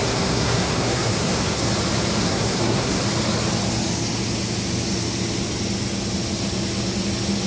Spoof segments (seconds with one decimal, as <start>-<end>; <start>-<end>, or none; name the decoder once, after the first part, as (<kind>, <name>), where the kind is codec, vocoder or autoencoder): 0.0-1.7 (codec, SNAC); 2.2-3.0

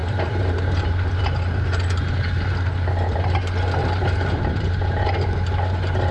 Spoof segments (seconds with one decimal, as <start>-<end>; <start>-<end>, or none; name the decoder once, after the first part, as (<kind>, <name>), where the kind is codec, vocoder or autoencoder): 0.0-1.2 (vocoder, BigVGAN v2); 3.8-5.1